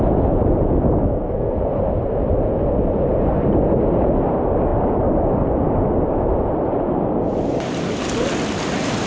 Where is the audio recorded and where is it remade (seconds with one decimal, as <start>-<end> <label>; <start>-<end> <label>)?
0.0-1.0 recorded; 1.0-1.6 remade; 1.6-9.1 recorded